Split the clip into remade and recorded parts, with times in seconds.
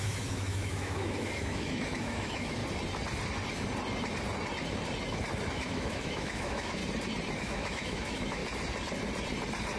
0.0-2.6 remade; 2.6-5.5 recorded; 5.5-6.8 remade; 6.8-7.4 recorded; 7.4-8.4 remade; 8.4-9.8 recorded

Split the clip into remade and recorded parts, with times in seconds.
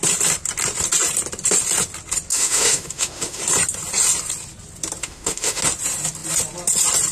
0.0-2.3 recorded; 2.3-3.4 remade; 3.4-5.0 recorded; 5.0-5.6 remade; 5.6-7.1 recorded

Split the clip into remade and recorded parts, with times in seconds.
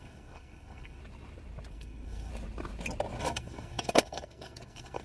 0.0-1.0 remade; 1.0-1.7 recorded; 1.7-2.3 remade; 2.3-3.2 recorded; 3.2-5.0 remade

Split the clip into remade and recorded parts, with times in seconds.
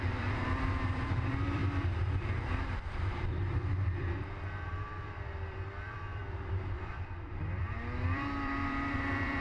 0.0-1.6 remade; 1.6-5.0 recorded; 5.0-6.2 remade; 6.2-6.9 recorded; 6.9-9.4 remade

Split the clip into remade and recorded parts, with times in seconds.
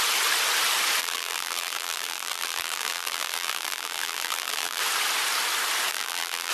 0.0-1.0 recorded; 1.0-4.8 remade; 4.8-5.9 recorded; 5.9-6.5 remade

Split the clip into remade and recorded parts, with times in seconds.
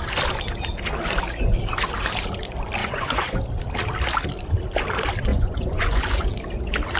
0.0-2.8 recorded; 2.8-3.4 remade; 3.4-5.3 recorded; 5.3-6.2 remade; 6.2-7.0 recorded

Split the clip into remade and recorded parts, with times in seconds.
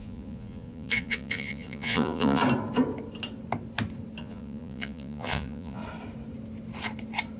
0.0-2.4 remade; 2.4-4.2 recorded; 4.2-5.8 remade; 5.8-7.4 recorded